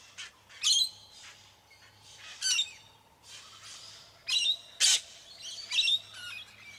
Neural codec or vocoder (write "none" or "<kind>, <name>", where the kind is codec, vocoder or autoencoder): none